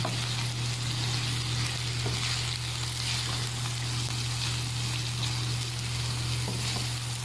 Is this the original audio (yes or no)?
yes